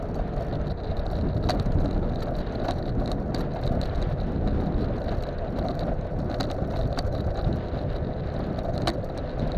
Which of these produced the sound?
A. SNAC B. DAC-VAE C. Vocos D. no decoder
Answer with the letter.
D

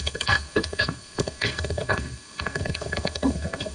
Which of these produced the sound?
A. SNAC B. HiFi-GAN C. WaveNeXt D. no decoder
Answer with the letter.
A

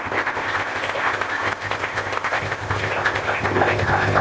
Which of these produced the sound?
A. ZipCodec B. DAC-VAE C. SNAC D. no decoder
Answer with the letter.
A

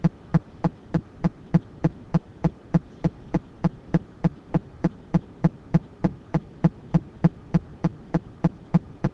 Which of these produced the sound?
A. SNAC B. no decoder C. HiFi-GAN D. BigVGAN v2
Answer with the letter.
D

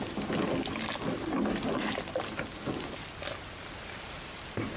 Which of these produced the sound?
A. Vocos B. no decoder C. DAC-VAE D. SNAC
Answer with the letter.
B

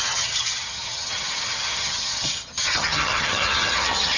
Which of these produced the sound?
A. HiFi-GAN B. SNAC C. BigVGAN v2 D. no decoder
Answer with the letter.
A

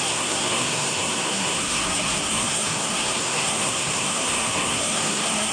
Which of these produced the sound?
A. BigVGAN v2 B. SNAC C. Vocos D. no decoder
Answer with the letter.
B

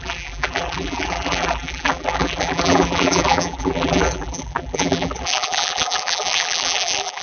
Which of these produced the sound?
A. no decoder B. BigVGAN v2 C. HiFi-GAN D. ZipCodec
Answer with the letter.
B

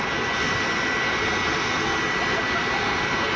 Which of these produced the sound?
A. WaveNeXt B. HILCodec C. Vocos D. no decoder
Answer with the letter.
D